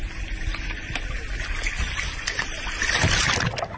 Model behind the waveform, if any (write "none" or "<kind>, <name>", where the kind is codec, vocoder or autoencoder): none